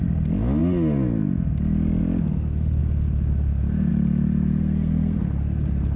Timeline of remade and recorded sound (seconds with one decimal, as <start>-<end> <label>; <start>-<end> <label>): 0.0-4.6 recorded; 4.6-5.2 remade; 5.2-6.0 recorded